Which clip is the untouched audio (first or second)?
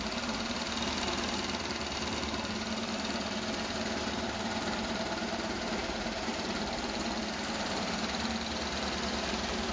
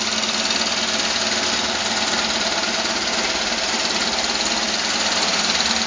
second